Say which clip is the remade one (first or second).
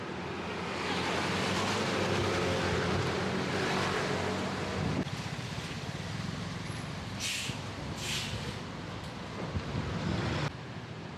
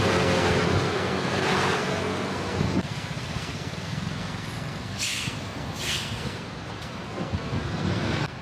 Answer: second